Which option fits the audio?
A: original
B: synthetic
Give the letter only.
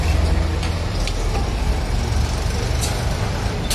A